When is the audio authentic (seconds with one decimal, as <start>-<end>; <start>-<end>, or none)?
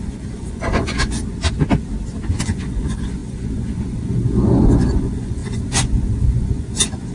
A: 1.2-2.4